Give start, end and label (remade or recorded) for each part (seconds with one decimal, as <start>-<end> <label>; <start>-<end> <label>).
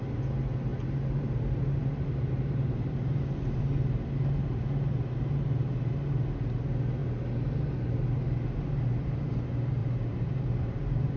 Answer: 0.0-0.7 recorded; 0.7-3.6 remade; 3.6-9.8 recorded; 9.8-11.2 remade